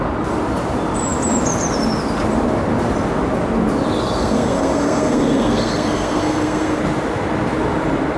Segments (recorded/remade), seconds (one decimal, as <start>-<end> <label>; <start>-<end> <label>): 0.0-4.2 recorded; 4.2-6.8 remade; 6.8-8.2 recorded